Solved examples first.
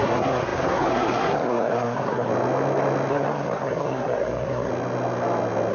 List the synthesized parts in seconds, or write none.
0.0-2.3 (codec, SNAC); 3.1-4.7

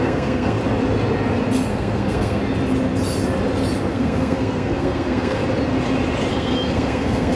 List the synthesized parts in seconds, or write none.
0.0-0.6 (codec, SNAC); 1.7-2.4; 3.9-5.4; 6.3-7.4

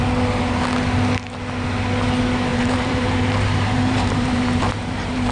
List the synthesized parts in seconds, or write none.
2.5-5.3 (vocoder, BigVGAN v2)

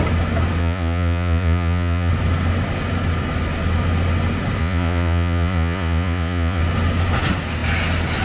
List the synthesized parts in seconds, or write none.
0.6-2.1 (vocoder, Vocos); 4.6-6.6

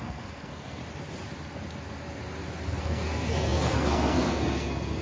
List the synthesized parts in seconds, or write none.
0.0-0.8 (codec, SNAC); 2.8-5.0

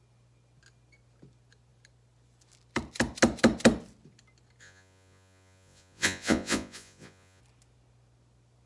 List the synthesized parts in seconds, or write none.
4.6-7.4 (vocoder, Vocos)